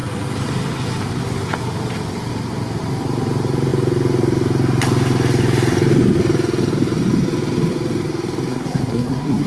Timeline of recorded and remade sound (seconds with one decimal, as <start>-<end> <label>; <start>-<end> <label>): 0.0-8.5 recorded; 8.5-9.5 remade